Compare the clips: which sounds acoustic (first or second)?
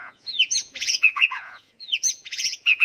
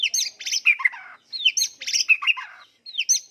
second